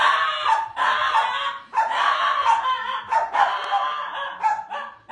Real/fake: real